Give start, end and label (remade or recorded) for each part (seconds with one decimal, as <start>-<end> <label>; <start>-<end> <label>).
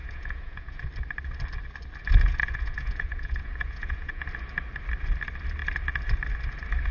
0.0-0.8 remade; 0.8-2.4 recorded; 2.4-4.2 remade; 4.2-6.9 recorded